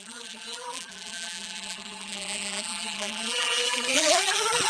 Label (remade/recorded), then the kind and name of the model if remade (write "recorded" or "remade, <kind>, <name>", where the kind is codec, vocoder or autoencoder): remade, vocoder, BigVGAN v2